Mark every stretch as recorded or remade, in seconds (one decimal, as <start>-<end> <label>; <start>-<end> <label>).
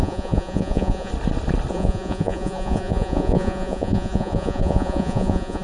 0.0-1.1 remade; 1.1-1.7 recorded; 1.7-5.6 remade